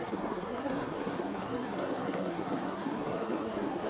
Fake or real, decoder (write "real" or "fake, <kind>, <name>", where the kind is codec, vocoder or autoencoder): fake, codec, SNAC